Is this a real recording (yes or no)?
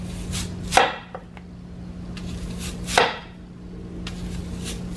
yes